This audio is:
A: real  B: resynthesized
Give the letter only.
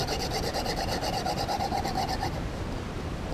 B